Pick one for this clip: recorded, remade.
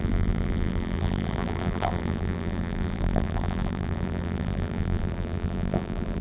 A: remade